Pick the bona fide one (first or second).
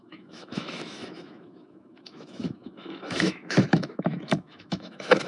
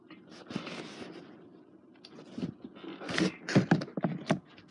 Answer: second